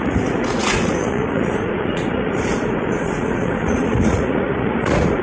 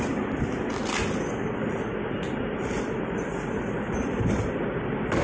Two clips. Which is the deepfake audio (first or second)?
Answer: first